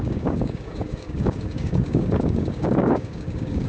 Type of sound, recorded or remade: remade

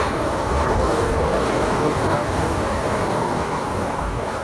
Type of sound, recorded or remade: remade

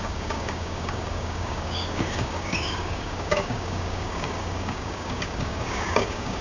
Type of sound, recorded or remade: remade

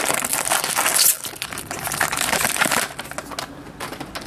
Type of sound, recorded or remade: recorded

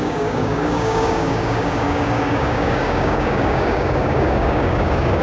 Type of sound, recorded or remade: remade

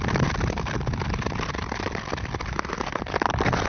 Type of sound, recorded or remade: recorded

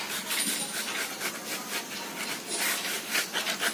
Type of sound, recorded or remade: recorded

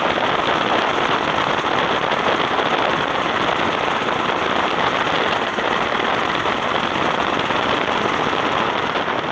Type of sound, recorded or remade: recorded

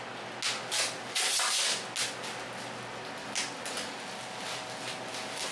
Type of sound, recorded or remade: recorded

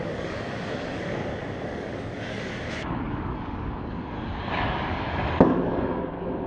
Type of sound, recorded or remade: remade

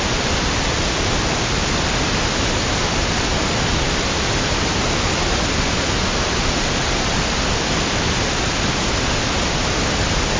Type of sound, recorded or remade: recorded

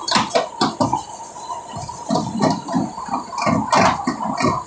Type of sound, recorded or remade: recorded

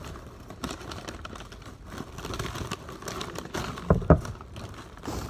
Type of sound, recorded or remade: recorded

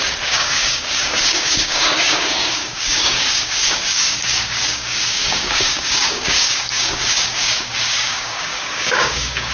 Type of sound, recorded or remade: remade